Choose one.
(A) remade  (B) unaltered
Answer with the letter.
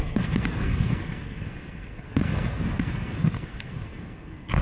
A